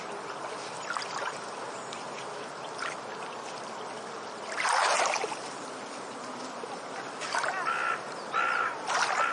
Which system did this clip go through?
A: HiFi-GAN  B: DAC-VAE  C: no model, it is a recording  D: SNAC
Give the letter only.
C